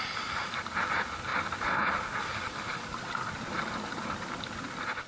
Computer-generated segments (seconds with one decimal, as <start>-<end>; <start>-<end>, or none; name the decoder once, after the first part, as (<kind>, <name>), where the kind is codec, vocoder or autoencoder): none